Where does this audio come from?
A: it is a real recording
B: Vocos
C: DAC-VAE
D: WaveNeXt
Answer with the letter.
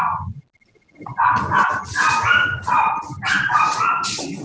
A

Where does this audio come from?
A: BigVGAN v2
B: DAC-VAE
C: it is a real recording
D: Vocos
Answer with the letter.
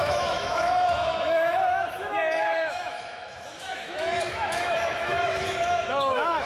B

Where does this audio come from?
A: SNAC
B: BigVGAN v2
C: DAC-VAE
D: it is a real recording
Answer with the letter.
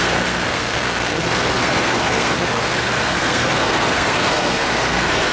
A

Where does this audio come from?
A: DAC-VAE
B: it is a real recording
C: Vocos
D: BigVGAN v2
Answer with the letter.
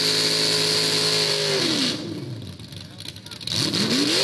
B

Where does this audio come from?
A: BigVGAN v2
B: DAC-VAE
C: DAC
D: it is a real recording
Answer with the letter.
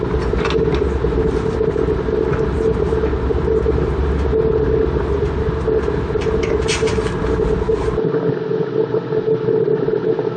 D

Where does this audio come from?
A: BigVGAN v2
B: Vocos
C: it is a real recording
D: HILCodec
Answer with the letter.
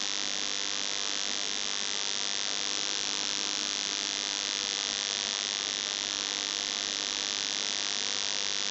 C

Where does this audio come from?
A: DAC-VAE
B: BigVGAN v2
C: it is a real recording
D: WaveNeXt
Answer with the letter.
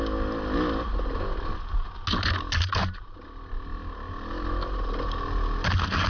C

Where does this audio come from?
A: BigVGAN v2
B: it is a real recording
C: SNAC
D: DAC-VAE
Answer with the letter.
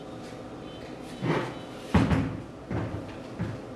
B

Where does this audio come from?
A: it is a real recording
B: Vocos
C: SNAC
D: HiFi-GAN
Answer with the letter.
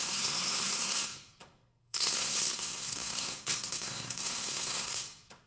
C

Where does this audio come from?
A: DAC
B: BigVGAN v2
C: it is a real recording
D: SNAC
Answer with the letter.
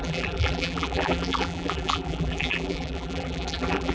B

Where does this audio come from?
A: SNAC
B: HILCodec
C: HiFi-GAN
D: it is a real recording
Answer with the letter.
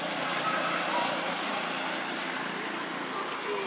D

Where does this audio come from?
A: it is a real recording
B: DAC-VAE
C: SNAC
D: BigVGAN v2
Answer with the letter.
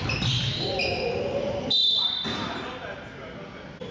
A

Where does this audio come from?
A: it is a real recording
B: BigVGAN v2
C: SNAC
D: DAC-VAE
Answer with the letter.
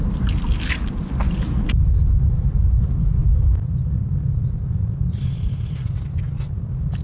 A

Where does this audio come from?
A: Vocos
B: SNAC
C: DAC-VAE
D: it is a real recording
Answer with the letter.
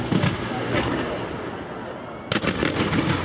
D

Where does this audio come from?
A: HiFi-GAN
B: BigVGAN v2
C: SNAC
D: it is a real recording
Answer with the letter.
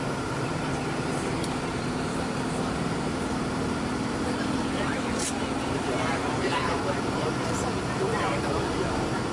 B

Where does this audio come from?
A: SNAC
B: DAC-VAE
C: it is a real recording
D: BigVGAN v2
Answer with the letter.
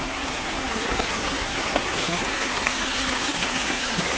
A